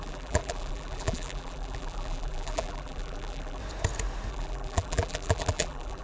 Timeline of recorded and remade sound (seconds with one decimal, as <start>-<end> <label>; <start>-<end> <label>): 0.0-3.6 remade; 3.6-4.3 recorded; 4.3-6.0 remade